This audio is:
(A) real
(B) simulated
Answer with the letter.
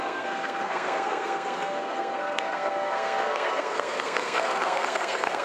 B